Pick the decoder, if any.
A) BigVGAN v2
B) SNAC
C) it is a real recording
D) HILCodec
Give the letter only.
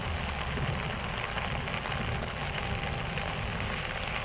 C